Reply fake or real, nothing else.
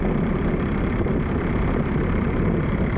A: real